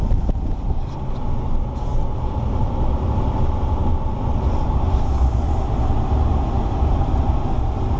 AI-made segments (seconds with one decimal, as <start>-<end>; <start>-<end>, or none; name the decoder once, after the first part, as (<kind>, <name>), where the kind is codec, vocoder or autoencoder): none